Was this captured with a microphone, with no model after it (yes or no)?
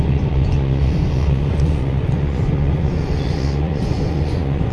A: no